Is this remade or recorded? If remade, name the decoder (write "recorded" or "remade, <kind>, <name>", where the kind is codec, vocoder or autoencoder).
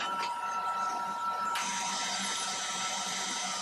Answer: remade, vocoder, BigVGAN v2